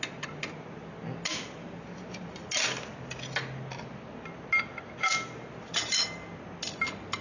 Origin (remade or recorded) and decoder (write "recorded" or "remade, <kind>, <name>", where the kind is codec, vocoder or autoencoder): recorded